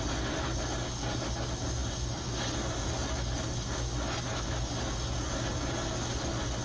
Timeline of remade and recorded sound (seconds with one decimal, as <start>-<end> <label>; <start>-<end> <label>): 0.0-6.6 recorded